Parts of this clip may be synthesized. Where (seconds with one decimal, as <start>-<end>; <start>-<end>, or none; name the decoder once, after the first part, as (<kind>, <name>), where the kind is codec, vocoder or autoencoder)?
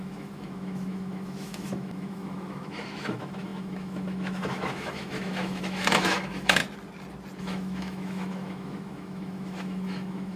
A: 0.0-6.6 (autoencoder, DAC-VAE); 7.4-10.4